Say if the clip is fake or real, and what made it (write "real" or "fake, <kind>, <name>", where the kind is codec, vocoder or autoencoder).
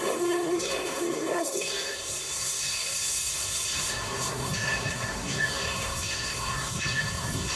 fake, codec, SNAC